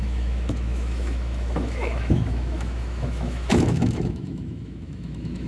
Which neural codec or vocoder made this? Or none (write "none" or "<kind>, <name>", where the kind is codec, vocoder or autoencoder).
autoencoder, DAC-VAE